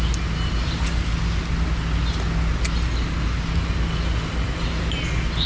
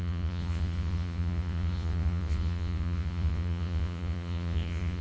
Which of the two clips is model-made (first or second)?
second